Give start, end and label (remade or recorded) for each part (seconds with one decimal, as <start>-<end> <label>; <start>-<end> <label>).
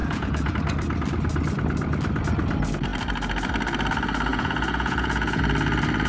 0.0-0.5 remade; 0.5-4.3 recorded; 4.3-5.4 remade; 5.4-6.1 recorded